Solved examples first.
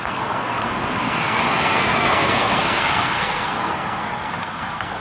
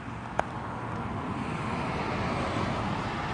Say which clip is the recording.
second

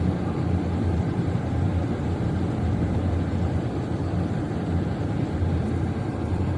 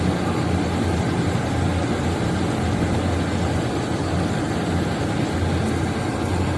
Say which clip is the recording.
second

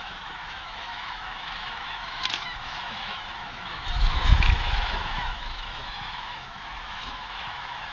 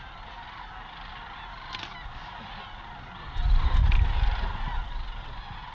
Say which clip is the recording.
second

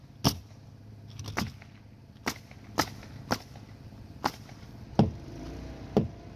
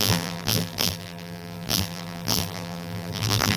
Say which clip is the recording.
first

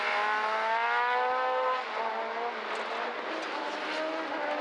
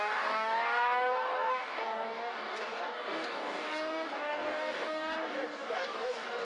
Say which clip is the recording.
first